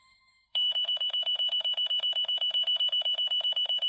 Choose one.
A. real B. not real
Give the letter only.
B